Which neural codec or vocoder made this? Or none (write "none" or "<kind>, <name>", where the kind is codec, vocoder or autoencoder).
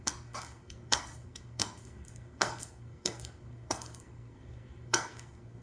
codec, SNAC